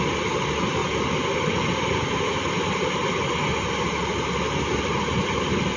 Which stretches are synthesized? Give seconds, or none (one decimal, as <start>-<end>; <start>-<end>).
none